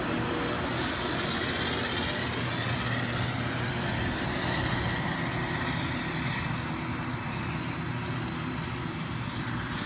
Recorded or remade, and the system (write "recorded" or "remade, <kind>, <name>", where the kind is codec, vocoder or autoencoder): recorded